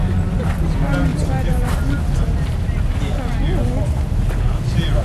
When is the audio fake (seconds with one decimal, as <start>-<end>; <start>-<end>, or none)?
1.1-3.0